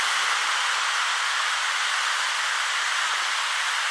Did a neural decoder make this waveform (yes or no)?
no